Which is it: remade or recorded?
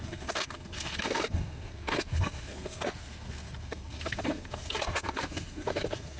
remade